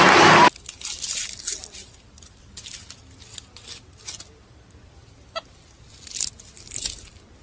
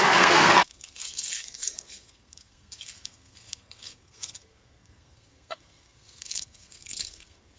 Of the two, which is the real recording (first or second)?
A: first